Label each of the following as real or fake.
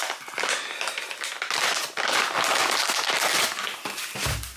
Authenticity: real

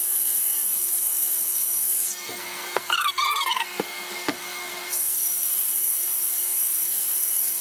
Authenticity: fake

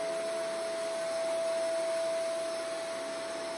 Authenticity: real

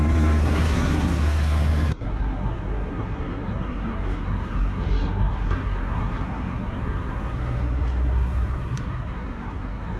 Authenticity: fake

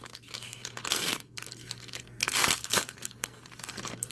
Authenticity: fake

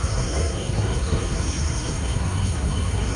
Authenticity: fake